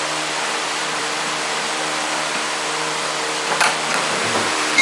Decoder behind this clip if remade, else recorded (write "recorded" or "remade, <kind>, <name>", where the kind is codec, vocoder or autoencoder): remade, vocoder, BigVGAN v2